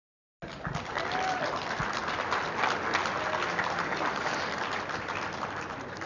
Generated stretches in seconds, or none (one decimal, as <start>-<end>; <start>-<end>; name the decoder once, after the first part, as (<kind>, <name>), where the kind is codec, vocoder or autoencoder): none